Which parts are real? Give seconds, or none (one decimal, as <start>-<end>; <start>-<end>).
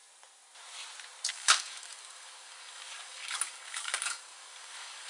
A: 0.0-1.3